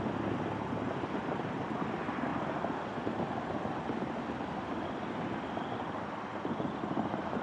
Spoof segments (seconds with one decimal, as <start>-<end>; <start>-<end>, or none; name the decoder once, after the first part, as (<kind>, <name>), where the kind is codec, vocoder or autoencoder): none